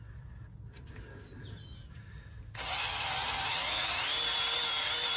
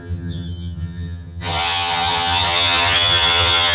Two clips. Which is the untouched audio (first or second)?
first